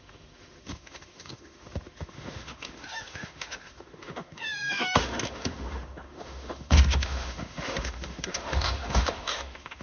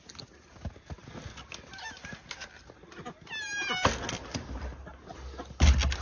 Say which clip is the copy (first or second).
first